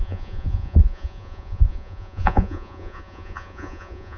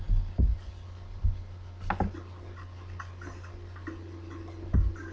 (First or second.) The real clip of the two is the second